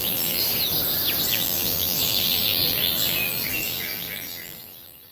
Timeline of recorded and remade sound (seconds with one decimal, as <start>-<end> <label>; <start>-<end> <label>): 0.0-0.4 remade; 0.4-1.3 recorded; 1.3-5.1 remade